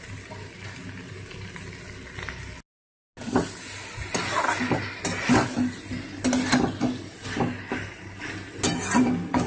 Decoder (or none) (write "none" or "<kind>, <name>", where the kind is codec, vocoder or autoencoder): none